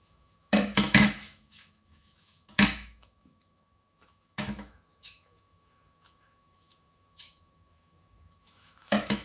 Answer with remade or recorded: remade